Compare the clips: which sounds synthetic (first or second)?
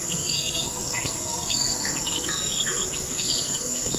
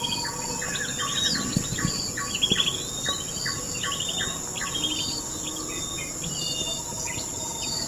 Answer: first